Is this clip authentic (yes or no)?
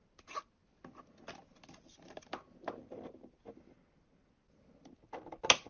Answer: yes